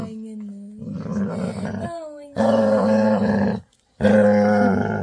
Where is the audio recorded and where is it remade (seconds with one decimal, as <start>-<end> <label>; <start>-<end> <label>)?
0.0-1.1 recorded; 1.1-4.1 remade; 4.1-5.0 recorded